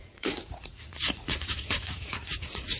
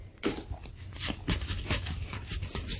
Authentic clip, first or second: second